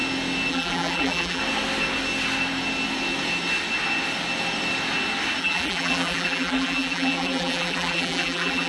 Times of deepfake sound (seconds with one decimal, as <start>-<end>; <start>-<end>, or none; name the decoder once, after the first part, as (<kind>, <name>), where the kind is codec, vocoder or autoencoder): 0.5-1.4 (vocoder, BigVGAN v2); 5.4-8.7